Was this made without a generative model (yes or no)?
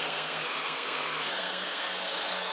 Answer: no